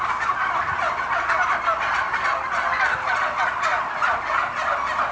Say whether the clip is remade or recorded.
recorded